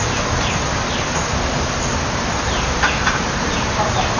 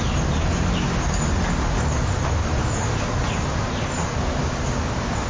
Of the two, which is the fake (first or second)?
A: first